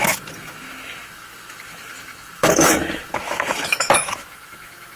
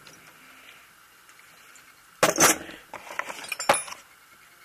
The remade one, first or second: first